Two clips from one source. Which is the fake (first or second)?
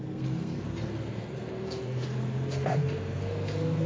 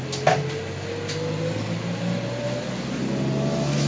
first